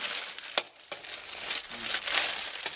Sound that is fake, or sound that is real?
real